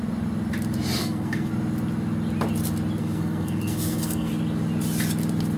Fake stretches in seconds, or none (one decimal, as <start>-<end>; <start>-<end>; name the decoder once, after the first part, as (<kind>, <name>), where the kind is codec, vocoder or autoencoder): 1.0-1.5 (codec, SNAC); 3.0-4.3